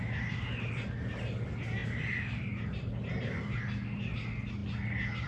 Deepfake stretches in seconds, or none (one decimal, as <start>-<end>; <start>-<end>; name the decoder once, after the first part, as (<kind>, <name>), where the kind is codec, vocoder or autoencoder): none